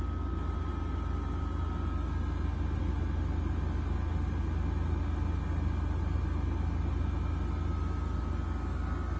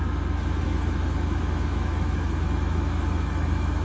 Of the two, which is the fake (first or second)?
second